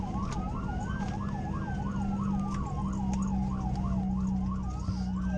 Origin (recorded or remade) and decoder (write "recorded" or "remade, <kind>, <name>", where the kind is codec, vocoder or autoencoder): recorded